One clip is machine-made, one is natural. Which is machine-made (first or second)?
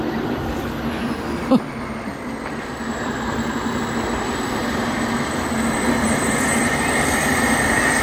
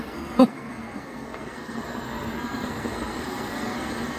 second